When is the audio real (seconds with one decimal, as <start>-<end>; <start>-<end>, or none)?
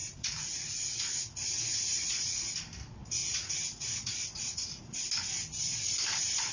2.5-3.2; 5.0-6.5